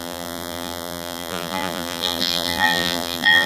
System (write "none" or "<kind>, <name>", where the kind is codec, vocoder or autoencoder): vocoder, BigVGAN v2